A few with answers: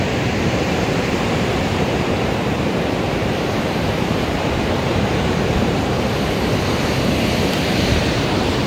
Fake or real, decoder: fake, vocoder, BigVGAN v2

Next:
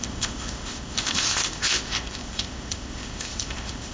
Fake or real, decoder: fake, codec, ZipCodec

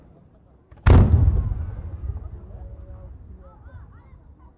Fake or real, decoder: real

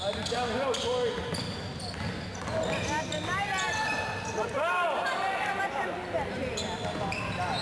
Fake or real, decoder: real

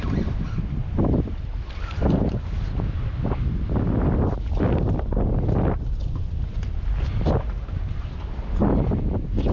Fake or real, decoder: real